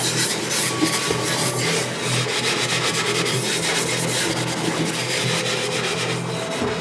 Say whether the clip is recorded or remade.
recorded